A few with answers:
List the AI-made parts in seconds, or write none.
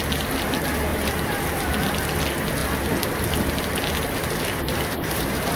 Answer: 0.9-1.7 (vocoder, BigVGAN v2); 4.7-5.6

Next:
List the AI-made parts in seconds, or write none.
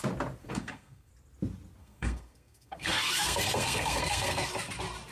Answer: 0.4-1.1 (codec, SNAC); 1.8-4.5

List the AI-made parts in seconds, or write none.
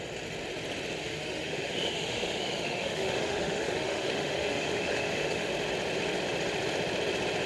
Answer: 1.0-5.5 (autoencoder, DAC-VAE)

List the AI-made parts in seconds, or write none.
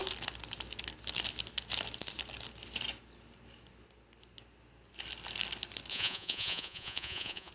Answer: 5.9-7.5 (vocoder, Vocos)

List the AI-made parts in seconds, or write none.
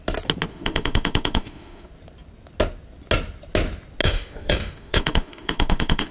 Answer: 0.5-1.9 (autoencoder, DAC-VAE); 4.0-6.1